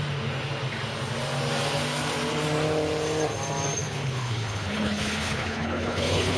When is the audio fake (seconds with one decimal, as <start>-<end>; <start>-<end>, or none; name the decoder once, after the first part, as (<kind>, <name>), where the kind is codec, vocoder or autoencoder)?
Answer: 3.8-6.4 (codec, HILCodec)